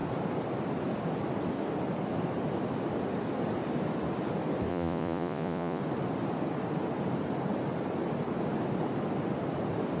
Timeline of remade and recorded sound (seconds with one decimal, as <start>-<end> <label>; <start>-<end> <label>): 0.0-4.7 recorded; 4.7-5.8 remade; 5.8-10.0 recorded